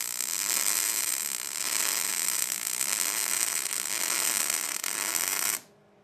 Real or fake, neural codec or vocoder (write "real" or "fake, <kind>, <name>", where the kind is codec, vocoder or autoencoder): real